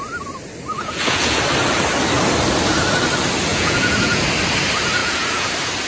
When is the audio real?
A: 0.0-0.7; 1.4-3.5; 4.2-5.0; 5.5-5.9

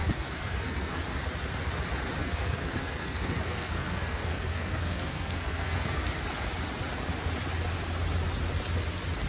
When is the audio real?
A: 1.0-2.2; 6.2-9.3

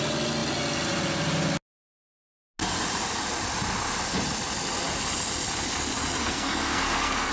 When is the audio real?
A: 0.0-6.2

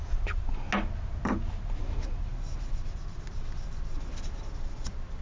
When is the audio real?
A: 0.0-5.2